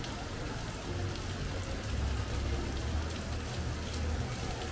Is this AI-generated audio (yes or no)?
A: no